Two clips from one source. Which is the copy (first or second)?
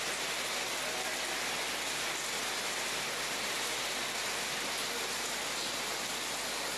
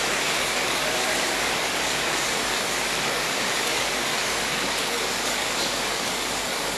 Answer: second